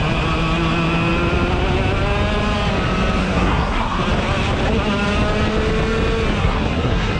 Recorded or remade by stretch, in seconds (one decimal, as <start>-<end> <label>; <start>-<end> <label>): 0.0-3.2 recorded; 3.2-4.0 remade; 4.0-6.4 recorded; 6.4-7.2 remade